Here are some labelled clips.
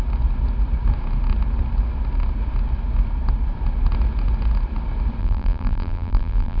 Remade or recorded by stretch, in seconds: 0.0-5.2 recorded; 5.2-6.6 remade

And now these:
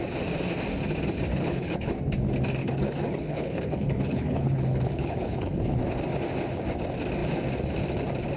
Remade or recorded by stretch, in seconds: 0.0-1.3 recorded; 1.3-1.9 remade; 1.9-2.6 recorded; 2.6-5.8 remade; 5.8-8.4 recorded

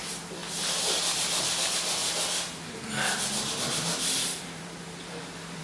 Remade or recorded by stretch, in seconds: 0.0-0.4 remade; 0.4-1.2 recorded; 1.2-2.0 remade; 2.0-2.6 recorded; 2.6-5.6 remade

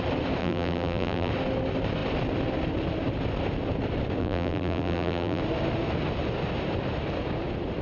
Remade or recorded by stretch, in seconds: 0.0-0.4 recorded; 0.4-1.3 remade; 1.3-4.2 recorded; 4.2-5.4 remade; 5.4-7.8 recorded